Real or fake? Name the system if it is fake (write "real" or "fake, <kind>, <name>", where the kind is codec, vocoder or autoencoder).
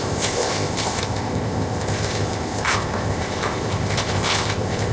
fake, codec, ZipCodec